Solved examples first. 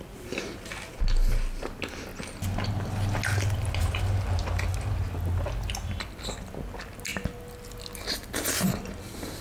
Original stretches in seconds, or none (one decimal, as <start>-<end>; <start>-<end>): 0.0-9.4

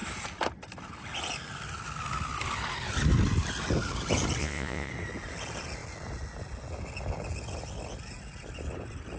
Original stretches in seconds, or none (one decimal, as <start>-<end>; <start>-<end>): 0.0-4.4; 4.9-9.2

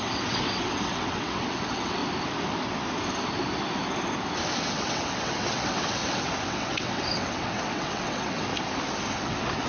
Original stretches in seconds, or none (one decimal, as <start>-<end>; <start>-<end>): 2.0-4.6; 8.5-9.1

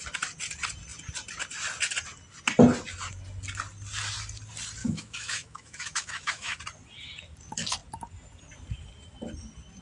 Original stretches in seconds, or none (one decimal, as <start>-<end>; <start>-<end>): 0.0-4.8; 6.6-9.8

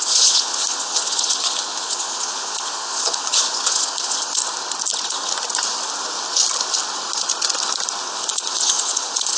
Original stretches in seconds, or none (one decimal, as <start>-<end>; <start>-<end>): 4.4-8.1